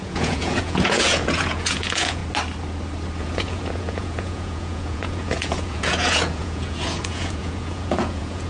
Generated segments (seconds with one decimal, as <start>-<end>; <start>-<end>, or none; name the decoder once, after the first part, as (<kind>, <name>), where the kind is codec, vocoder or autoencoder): 0.0-2.2 (vocoder, Vocos); 3.2-8.5